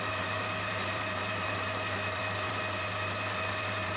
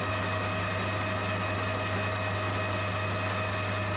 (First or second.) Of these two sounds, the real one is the second